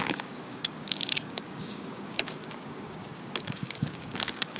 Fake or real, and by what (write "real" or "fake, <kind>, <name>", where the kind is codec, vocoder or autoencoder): fake, codec, DAC